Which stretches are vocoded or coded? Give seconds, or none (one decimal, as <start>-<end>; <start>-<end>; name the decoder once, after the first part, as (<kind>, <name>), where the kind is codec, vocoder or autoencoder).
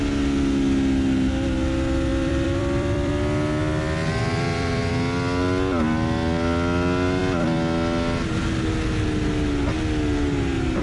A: 2.1-3.1 (vocoder, BigVGAN v2); 4.0-4.9